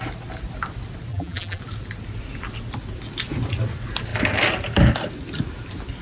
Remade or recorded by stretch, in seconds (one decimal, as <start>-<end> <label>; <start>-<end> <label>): 0.0-1.1 recorded; 1.1-1.6 remade; 1.6-6.0 recorded